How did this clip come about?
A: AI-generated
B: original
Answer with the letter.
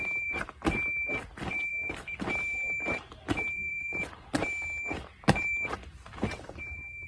A